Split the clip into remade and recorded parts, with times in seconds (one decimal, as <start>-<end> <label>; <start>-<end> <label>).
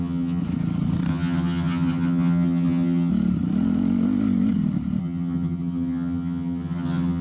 0.0-0.4 remade; 0.4-1.1 recorded; 1.1-3.1 remade; 3.1-5.0 recorded; 5.0-7.2 remade